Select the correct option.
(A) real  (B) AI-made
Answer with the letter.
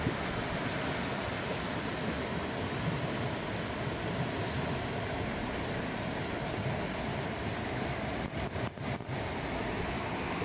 A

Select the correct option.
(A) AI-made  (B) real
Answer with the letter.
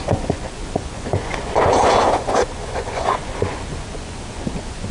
A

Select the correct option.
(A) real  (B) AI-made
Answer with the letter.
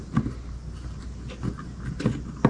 A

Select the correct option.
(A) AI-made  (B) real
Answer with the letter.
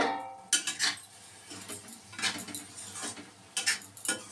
B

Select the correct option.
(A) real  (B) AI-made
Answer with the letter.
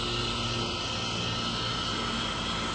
A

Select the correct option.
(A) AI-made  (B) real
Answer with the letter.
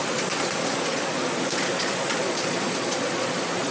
A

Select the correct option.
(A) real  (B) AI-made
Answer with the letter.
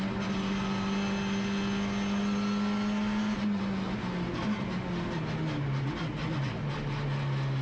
A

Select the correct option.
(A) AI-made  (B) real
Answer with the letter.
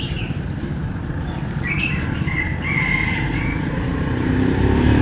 B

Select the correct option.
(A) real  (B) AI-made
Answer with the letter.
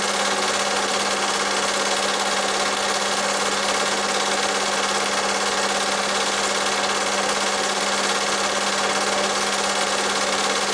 A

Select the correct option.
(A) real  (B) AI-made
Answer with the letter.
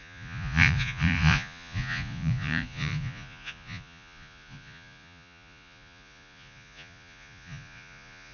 B